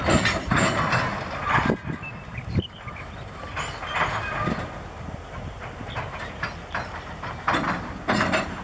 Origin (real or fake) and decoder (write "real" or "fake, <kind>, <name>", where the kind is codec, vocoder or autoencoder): real